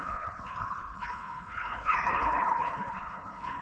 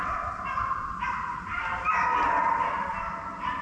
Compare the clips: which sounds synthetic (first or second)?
first